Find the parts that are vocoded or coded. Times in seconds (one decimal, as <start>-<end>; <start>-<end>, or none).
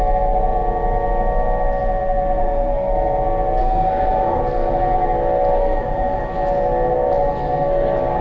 2.4-2.9; 3.6-4.4; 5.6-6.2